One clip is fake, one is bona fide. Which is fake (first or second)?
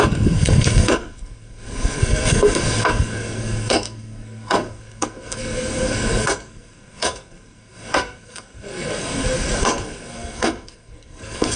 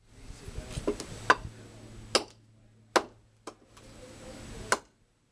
first